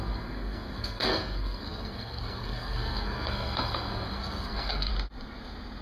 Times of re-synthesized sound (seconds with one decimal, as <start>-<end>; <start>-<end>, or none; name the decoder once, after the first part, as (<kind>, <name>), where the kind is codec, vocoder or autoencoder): 0.0-4.9 (codec, SNAC)

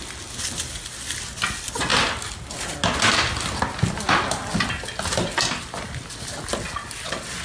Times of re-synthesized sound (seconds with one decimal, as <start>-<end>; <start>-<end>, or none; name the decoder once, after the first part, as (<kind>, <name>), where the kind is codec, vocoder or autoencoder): none

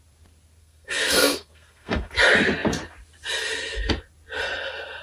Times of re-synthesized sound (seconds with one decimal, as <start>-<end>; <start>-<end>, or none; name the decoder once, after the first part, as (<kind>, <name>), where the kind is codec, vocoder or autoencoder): 0.6-2.1 (codec, SNAC)

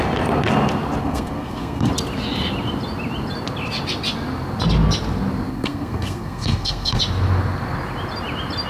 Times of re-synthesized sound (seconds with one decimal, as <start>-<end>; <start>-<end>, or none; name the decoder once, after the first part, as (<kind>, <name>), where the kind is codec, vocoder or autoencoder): 1.0-1.9 (codec, SNAC); 5.5-7.0

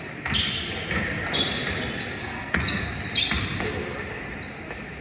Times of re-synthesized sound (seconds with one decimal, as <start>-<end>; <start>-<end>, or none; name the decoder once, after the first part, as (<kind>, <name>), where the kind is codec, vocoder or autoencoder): 2.2-2.8 (codec, SNAC)

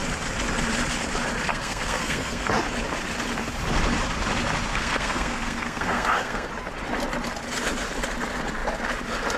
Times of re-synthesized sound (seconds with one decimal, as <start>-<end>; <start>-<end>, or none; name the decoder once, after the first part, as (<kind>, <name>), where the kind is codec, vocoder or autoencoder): 1.5-2.5 (codec, SNAC); 4.7-6.5